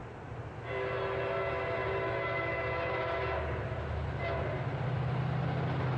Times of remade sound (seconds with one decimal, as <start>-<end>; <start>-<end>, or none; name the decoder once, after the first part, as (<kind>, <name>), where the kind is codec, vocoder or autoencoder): none